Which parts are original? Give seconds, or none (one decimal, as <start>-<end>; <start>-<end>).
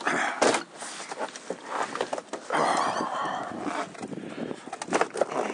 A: 0.0-5.5